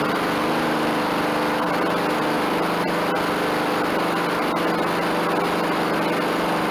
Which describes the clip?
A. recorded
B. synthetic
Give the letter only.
A